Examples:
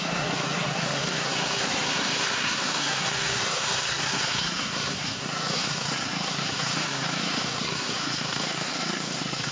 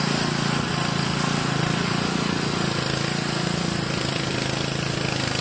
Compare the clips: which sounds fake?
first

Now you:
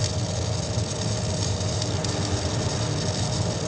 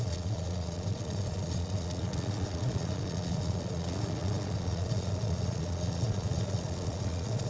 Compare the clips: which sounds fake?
second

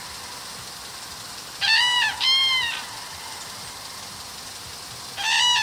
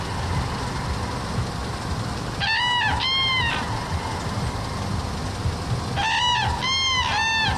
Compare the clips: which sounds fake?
first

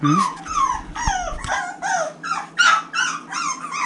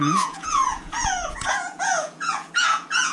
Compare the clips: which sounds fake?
second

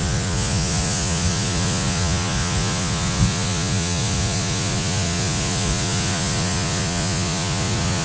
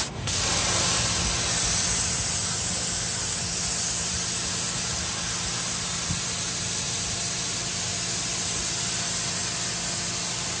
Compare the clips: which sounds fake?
first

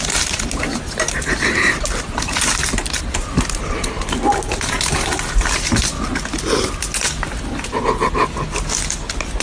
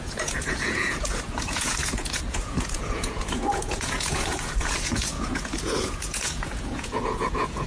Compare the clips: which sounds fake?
second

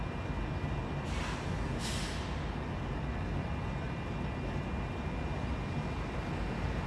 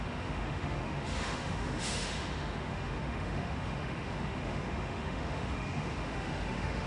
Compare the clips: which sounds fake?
second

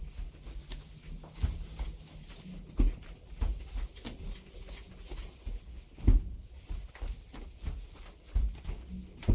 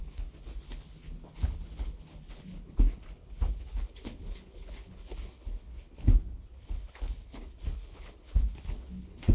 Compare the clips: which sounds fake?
second